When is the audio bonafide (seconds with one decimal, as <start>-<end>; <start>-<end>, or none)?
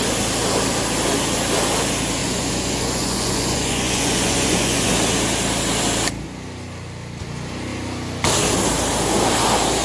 0.0-2.2; 4.9-9.8